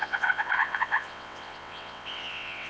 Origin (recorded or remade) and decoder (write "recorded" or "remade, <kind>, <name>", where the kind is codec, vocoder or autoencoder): remade, vocoder, WaveNeXt